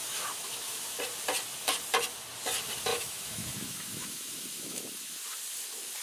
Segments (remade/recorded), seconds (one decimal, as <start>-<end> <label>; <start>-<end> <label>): 0.0-1.0 remade; 1.0-2.9 recorded; 2.9-5.2 remade; 5.2-6.0 recorded